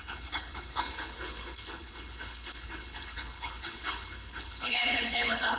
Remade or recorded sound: remade